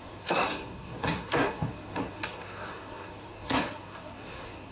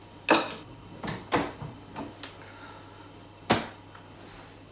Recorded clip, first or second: second